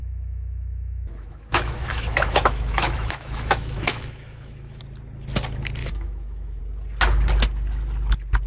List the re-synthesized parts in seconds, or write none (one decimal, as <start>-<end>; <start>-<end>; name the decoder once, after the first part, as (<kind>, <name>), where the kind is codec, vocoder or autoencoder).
0.0-4.8 (autoencoder, DAC-VAE); 5.8-6.6